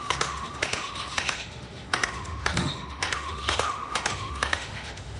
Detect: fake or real fake